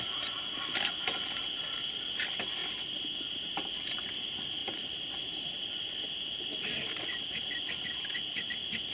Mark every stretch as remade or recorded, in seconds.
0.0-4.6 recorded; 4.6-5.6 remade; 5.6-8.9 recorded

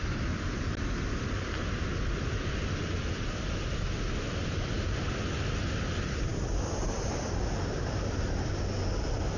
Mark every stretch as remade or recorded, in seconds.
0.0-9.4 recorded